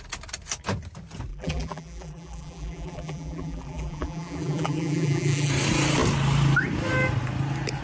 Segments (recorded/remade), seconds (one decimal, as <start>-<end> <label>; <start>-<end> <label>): 0.0-1.3 recorded; 1.3-5.5 remade; 5.5-7.8 recorded